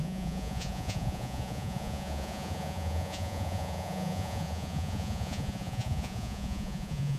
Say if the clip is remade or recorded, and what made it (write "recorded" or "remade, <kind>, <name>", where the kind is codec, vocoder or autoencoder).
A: remade, vocoder, Vocos